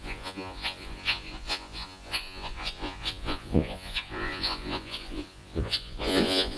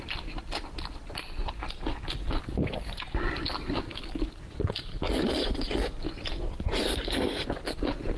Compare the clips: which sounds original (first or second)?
second